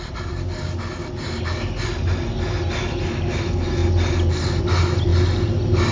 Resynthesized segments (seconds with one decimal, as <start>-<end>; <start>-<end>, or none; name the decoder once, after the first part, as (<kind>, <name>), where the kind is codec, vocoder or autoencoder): none